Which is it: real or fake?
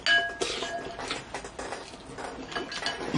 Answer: real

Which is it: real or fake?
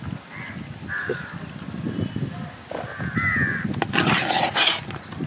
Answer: real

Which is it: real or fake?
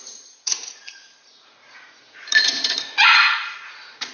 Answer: fake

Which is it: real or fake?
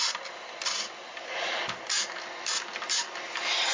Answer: real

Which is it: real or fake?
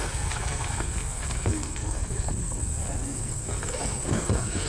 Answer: fake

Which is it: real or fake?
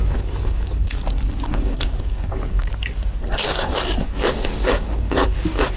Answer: fake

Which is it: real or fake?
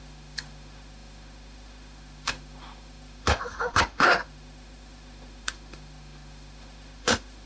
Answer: fake